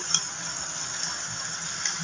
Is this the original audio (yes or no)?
yes